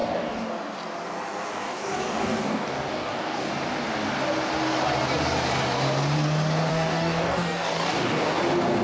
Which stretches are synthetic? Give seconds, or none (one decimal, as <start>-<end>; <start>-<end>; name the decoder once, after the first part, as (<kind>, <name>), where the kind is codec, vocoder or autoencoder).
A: 0.0-0.5 (codec, DAC); 1.5-3.5; 6.7-8.3